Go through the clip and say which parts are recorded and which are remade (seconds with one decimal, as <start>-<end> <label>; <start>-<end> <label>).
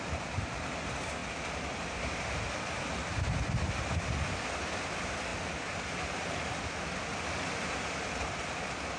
0.0-1.2 recorded; 1.2-2.8 remade; 2.8-5.3 recorded; 5.3-8.2 remade; 8.2-9.0 recorded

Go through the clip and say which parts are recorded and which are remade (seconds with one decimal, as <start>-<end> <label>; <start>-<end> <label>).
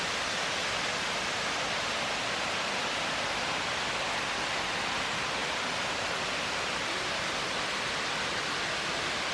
0.0-5.4 recorded; 5.4-6.1 remade; 6.1-9.3 recorded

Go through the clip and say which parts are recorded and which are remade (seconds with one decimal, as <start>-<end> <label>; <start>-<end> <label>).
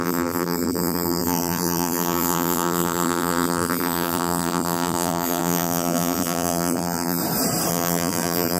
0.0-7.2 remade; 7.2-7.7 recorded; 7.7-8.6 remade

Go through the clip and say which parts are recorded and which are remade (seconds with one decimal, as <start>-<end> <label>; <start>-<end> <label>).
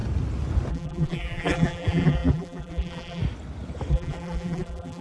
0.0-0.7 recorded; 0.7-3.2 remade; 3.2-3.9 recorded; 3.9-5.0 remade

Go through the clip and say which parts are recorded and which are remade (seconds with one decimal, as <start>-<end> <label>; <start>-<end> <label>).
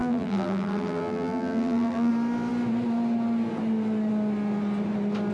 0.0-2.1 remade; 2.1-5.3 recorded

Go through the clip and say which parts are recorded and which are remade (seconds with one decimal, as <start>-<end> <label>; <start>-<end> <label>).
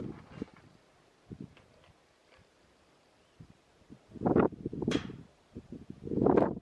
0.0-2.2 recorded; 2.2-6.6 remade